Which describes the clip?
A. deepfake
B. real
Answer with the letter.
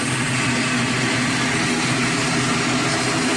B